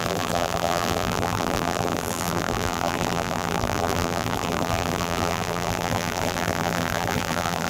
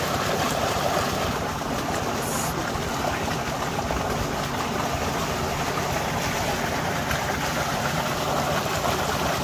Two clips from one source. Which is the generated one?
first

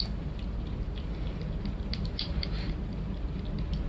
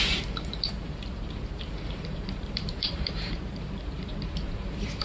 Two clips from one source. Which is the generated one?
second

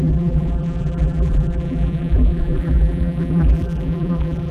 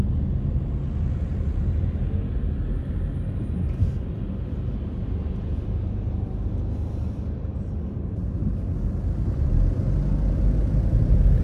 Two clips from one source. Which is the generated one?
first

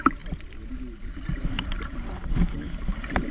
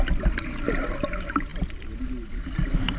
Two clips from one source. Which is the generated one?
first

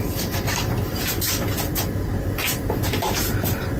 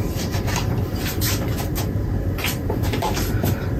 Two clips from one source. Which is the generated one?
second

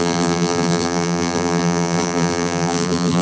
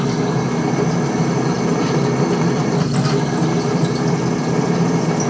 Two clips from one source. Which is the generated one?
first